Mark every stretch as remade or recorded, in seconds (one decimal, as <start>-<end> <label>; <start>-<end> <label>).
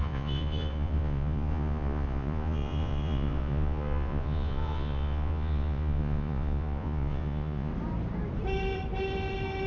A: 0.0-7.7 remade; 7.7-9.7 recorded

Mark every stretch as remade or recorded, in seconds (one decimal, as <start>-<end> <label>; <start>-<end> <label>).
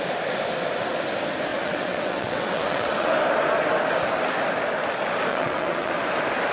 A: 0.0-1.5 recorded; 1.5-3.1 remade; 3.1-5.3 recorded; 5.3-5.9 remade; 5.9-6.5 recorded